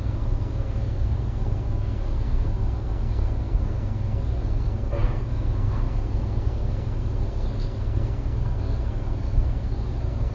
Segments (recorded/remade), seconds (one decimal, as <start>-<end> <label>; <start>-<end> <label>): 0.0-10.3 remade